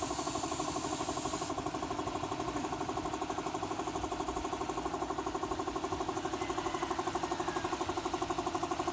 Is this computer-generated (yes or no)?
no